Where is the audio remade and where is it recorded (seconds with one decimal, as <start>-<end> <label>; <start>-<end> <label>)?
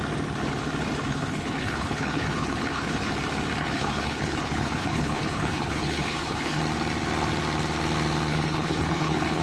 0.0-1.1 recorded; 1.1-3.1 remade; 3.1-3.6 recorded; 3.6-6.6 remade; 6.6-8.3 recorded; 8.3-9.4 remade